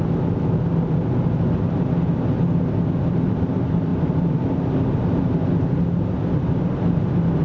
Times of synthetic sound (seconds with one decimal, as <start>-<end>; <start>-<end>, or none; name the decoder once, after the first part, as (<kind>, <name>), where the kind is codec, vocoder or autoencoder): none